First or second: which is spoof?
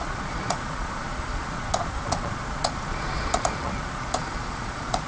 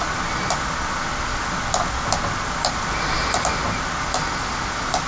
first